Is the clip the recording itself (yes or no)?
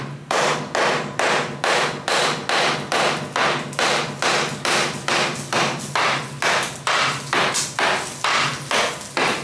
yes